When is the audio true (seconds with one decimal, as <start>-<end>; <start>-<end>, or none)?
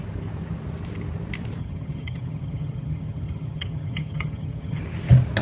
0.0-1.6; 4.8-5.4